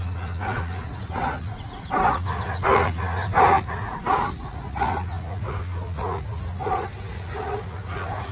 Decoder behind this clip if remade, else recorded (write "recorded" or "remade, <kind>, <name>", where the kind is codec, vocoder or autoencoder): remade, vocoder, Vocos